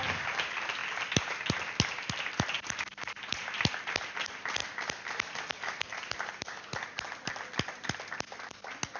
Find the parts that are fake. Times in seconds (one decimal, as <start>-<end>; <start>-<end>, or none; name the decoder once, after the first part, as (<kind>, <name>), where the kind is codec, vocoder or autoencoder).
none